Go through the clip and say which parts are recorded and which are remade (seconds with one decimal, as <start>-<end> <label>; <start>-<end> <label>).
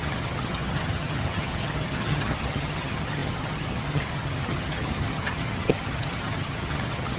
0.0-7.2 remade